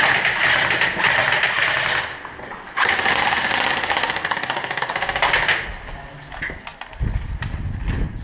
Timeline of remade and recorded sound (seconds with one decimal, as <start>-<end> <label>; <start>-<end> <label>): 0.0-8.2 recorded

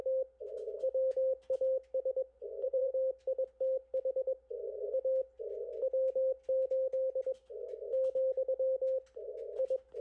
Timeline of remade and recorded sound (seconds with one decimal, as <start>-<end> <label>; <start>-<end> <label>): 0.0-2.3 recorded; 2.3-2.9 remade; 2.9-10.0 recorded

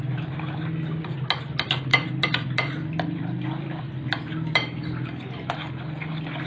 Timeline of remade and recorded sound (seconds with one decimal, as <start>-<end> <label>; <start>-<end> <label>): 0.0-1.9 recorded; 1.9-3.8 remade; 3.8-6.5 recorded

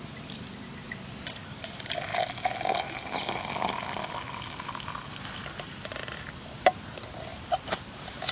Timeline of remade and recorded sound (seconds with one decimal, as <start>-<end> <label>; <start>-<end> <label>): 0.0-2.1 remade; 2.1-4.6 recorded; 4.6-8.3 remade

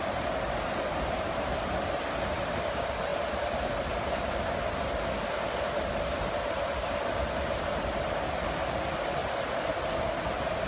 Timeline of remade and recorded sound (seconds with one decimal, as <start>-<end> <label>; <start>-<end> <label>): 0.0-9.2 recorded; 9.2-9.7 remade; 9.7-10.7 recorded